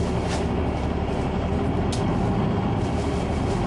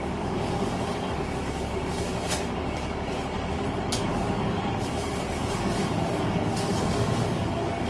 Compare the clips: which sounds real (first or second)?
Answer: first